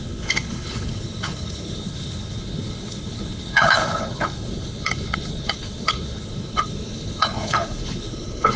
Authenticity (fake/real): fake